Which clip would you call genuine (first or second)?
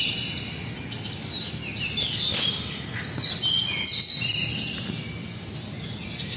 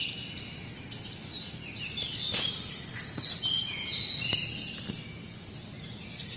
first